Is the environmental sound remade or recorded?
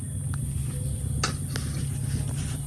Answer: recorded